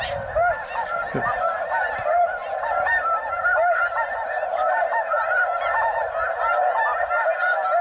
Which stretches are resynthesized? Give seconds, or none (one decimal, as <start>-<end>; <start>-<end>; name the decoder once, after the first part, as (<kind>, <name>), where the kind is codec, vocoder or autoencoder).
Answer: 2.4-5.2 (vocoder, BigVGAN v2)